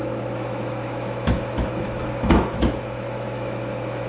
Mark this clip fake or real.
fake